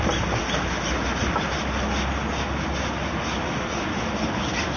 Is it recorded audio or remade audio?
recorded